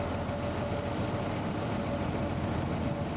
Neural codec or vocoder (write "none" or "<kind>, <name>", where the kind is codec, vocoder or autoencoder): none